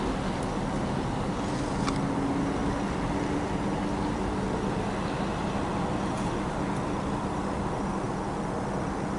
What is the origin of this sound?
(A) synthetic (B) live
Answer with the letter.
B